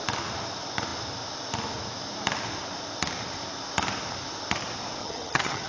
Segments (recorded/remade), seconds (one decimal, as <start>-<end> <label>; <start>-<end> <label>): 0.0-5.0 recorded; 5.0-5.7 remade

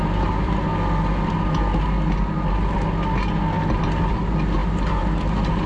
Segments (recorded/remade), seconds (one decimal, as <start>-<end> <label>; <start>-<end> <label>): 0.0-0.7 remade; 0.7-4.1 recorded; 4.1-5.7 remade

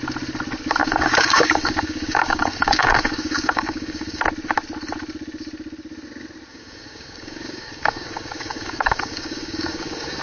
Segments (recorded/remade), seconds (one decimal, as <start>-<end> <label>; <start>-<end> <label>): 0.0-0.8 recorded; 0.8-4.2 remade; 4.2-6.5 recorded; 6.5-10.2 remade